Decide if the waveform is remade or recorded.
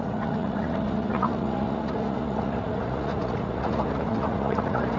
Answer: remade